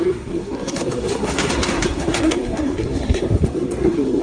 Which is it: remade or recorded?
remade